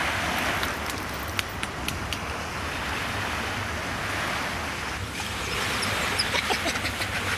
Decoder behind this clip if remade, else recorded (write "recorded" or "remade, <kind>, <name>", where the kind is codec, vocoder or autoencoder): recorded